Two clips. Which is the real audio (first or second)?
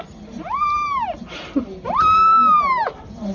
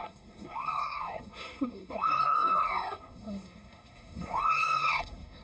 first